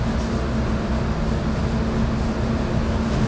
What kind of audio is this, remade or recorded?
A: recorded